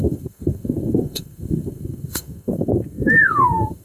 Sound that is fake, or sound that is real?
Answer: fake